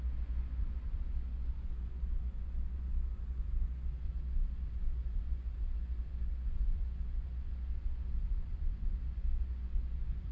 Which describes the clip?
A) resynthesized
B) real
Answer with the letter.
A